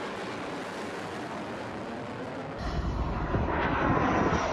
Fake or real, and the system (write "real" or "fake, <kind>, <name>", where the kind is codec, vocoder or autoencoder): real